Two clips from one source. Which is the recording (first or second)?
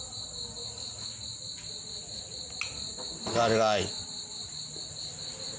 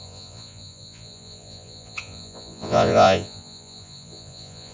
first